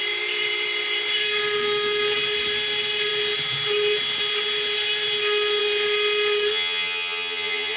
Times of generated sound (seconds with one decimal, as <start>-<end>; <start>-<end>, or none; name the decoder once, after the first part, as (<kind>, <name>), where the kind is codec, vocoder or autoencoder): 6.5-7.8 (vocoder, HiFi-GAN)